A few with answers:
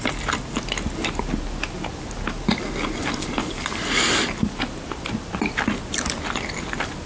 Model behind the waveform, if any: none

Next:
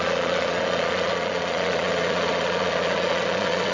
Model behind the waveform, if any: vocoder, Vocos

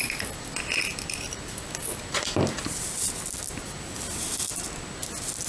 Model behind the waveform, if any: none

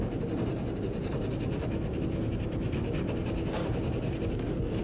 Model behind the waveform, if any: none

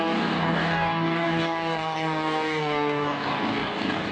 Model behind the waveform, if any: codec, DAC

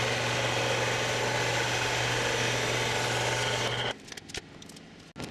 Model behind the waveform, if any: none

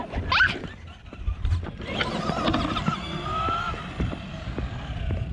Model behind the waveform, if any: none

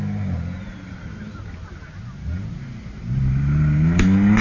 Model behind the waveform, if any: none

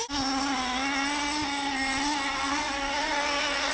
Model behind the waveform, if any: none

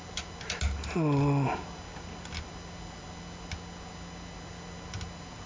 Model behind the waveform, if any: none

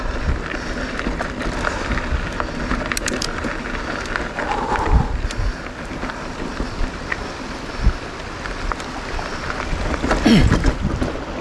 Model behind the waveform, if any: none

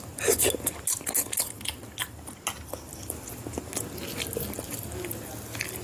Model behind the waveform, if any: none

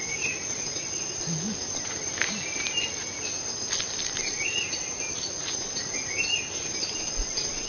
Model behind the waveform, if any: none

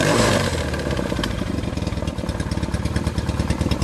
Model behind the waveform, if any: vocoder, BigVGAN v2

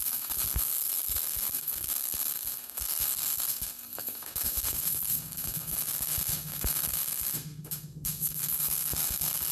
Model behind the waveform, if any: codec, SNAC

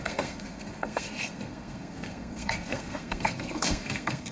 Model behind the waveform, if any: codec, SNAC